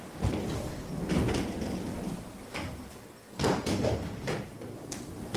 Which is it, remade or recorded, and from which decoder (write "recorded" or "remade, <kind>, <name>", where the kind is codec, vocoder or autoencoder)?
recorded